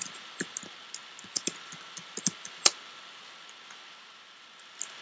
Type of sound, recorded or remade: recorded